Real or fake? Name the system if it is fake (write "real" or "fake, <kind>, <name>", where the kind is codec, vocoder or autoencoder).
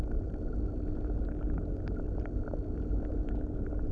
real